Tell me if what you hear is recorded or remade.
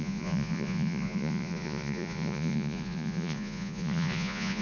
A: remade